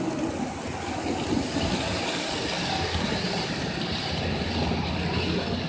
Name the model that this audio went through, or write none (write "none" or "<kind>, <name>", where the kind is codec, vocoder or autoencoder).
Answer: none